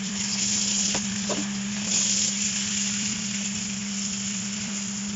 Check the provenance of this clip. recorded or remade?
remade